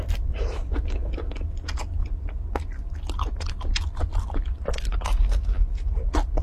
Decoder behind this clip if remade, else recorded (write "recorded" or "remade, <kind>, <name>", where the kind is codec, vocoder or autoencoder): recorded